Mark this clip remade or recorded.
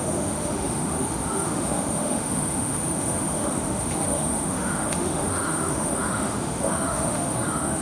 remade